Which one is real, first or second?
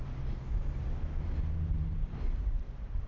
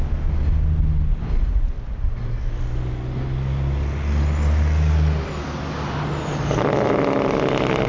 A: second